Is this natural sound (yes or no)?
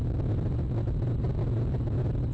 yes